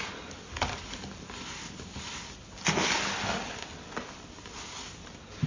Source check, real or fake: real